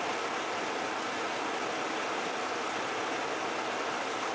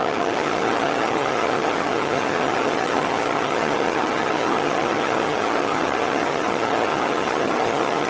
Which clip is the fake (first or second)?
second